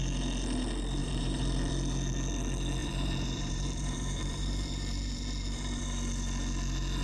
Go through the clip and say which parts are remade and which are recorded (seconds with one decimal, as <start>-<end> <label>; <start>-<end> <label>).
0.0-1.0 recorded; 1.0-1.7 remade; 1.7-2.8 recorded; 2.8-5.8 remade; 5.8-7.0 recorded